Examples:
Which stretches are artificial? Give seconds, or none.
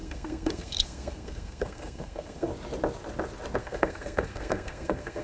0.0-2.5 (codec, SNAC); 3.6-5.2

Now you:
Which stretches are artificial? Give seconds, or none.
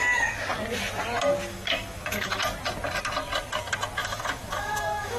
1.5-2.4 (autoencoder, DAC-VAE); 4.0-5.2